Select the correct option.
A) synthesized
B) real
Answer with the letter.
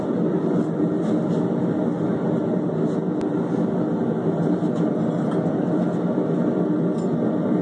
B